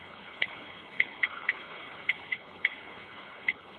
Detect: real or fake fake